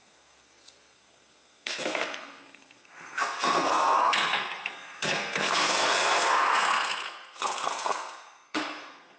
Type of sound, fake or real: fake